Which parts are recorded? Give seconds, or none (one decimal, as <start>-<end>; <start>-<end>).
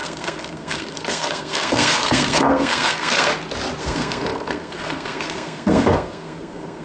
3.3-3.8